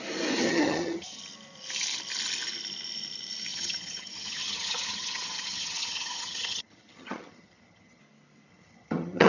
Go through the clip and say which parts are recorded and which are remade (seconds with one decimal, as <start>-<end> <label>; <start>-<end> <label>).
0.0-0.4 recorded; 0.4-1.2 remade; 1.2-3.5 recorded; 3.5-8.0 remade; 8.0-8.5 recorded; 8.5-9.3 remade